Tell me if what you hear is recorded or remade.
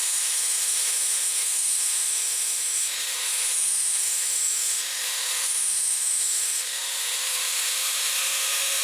remade